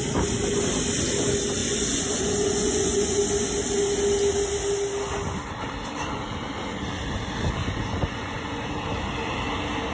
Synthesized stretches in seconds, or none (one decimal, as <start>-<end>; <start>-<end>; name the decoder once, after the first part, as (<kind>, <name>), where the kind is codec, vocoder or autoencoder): 1.6-3.2 (vocoder, Vocos); 7.6-8.7